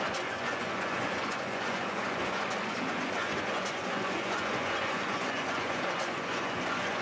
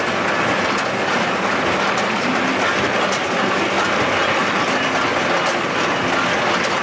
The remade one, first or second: first